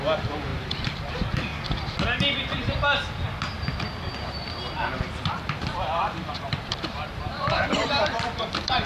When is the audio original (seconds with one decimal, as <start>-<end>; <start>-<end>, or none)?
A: 1.5-5.3